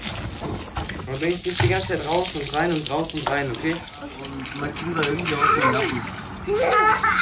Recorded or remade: recorded